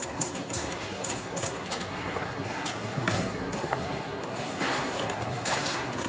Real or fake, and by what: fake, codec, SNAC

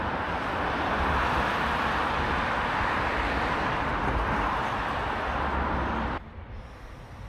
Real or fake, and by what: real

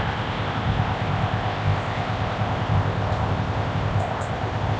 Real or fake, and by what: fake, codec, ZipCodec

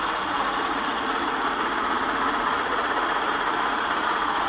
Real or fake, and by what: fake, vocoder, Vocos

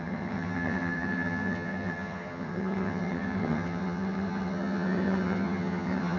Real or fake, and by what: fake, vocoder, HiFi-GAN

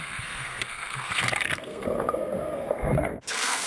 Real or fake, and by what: fake, codec, SNAC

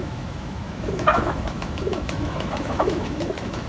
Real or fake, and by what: fake, autoencoder, DAC-VAE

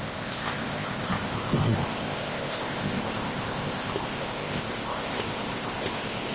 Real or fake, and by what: fake, codec, ZipCodec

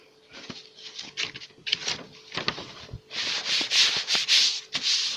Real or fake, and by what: real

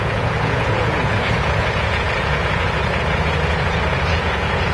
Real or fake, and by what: fake, vocoder, Vocos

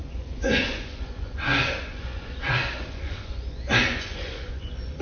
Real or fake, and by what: fake, vocoder, Vocos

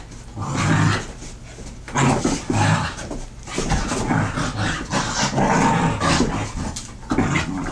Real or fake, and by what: real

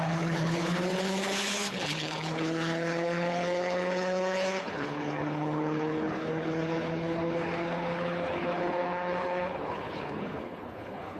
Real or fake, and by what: fake, codec, HILCodec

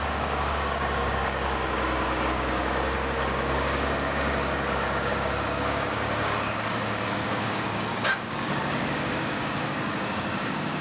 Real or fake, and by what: fake, codec, DAC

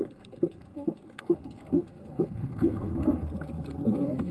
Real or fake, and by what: fake, codec, SNAC